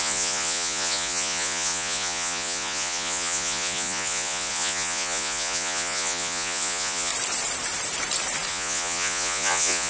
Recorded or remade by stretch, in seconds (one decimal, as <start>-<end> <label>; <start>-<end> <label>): 0.0-7.1 remade; 7.1-8.5 recorded; 8.5-9.9 remade